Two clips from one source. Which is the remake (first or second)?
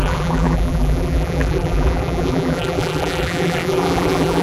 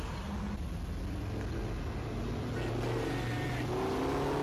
first